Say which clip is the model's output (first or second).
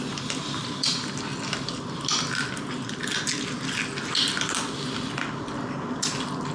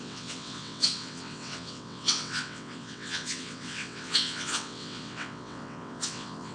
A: second